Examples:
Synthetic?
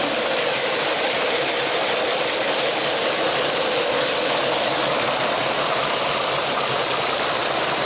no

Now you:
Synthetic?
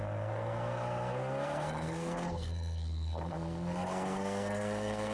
yes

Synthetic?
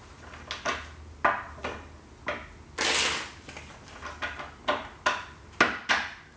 no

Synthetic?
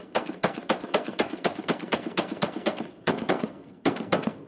yes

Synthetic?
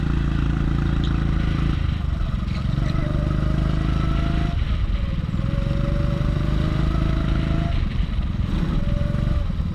no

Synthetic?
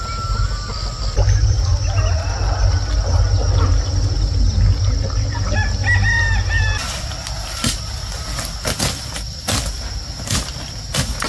no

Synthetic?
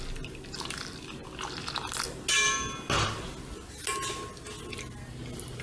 no